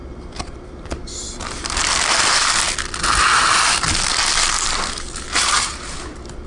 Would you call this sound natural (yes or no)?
yes